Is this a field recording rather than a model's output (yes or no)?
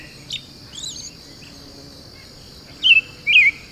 yes